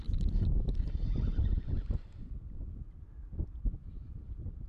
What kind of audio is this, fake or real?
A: fake